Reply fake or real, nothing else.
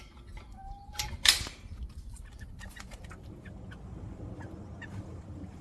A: fake